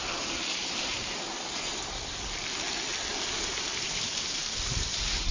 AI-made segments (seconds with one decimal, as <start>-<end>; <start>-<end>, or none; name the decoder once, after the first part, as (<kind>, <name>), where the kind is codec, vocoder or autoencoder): 0.6-1.8 (vocoder, BigVGAN v2); 3.1-5.3